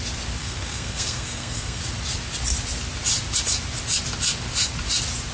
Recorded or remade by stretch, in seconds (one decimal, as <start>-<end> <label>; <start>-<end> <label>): 0.0-0.4 recorded; 0.4-1.8 remade; 1.8-5.3 recorded